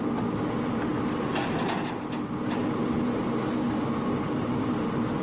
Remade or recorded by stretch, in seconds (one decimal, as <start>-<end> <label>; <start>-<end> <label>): 0.0-5.2 recorded